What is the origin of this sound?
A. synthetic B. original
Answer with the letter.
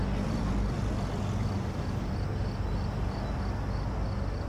B